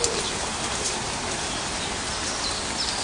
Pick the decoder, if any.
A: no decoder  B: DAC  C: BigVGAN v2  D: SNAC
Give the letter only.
A